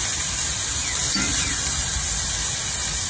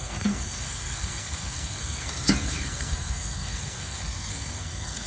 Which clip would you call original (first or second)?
first